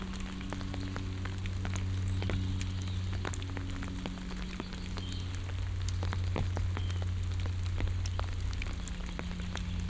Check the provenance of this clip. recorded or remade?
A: recorded